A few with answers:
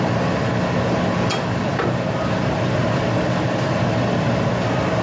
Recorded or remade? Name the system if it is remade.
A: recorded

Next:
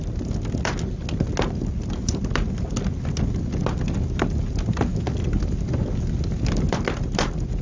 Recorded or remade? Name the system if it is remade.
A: recorded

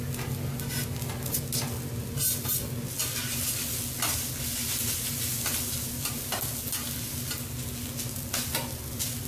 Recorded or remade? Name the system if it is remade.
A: recorded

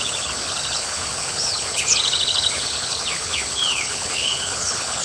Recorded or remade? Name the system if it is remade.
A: remade, codec, HILCodec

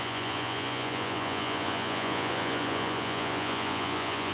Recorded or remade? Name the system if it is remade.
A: remade, vocoder, Vocos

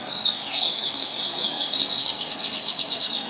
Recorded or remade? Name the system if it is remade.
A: remade, codec, SNAC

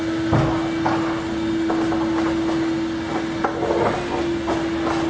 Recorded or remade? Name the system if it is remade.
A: recorded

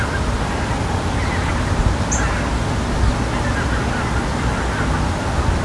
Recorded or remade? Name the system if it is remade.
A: recorded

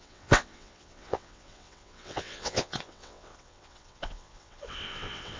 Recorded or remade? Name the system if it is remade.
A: remade, vocoder, WaveNeXt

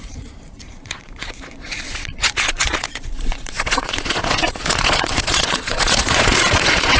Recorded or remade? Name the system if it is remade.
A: remade, vocoder, Vocos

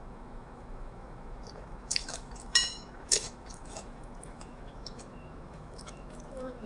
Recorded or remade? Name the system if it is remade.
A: remade, autoencoder, DAC-VAE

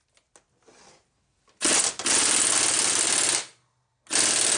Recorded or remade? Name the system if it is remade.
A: recorded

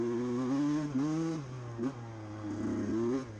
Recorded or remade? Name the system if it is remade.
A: recorded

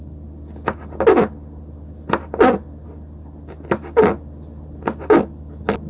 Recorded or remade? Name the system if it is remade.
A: recorded